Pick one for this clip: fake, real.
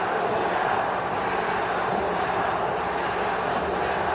real